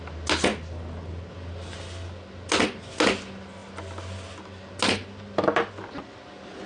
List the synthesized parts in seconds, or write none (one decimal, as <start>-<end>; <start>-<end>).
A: none